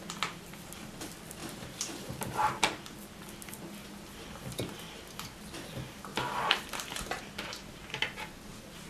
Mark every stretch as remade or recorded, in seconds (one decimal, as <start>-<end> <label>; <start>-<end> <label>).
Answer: 0.0-1.4 recorded; 1.4-2.5 remade; 2.5-6.1 recorded; 6.1-7.2 remade; 7.2-8.9 recorded